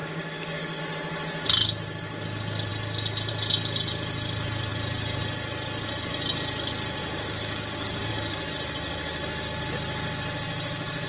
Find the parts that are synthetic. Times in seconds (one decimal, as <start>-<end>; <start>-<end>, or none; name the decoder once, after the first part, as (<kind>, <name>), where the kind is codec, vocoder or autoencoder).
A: 0.0-0.8 (codec, DAC); 7.0-8.1